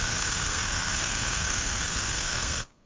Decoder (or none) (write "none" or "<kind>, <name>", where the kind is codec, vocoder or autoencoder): codec, SNAC